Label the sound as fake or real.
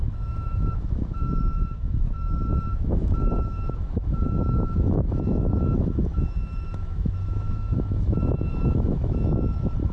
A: fake